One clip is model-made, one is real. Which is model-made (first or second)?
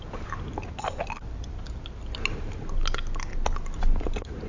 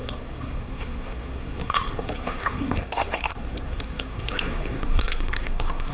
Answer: second